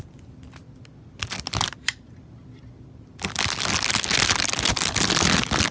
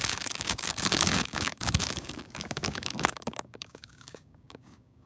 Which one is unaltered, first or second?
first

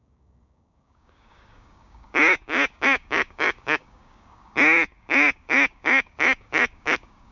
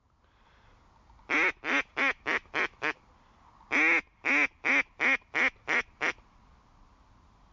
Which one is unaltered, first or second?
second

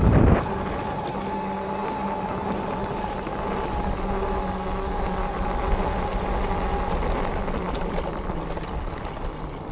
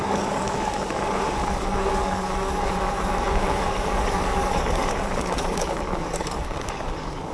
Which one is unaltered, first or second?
first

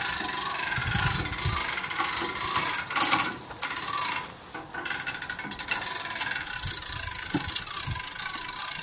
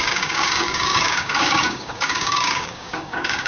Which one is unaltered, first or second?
first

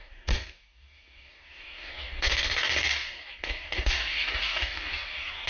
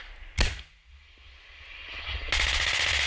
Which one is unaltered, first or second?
second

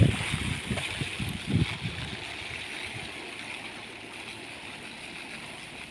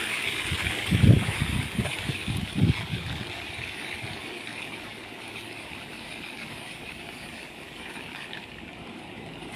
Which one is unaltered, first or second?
first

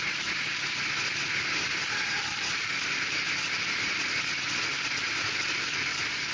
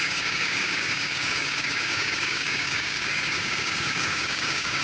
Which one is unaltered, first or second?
first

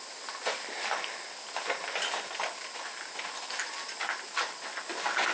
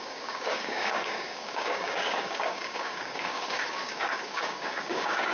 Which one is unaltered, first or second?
first